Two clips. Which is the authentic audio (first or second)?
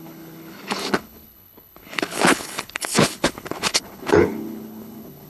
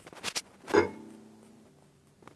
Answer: second